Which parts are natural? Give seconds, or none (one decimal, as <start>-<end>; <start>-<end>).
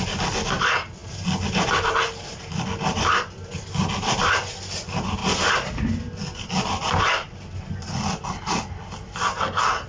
0.0-5.2; 8.6-9.9